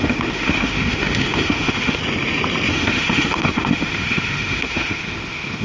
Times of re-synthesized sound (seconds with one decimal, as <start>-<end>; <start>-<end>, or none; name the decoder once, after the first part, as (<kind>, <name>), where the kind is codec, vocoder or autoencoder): 0.0-2.0 (autoencoder, DAC-VAE); 2.7-5.6